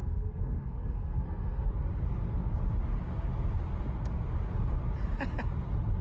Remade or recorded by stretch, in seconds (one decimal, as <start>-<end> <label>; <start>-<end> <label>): 0.0-1.7 remade; 1.7-6.0 recorded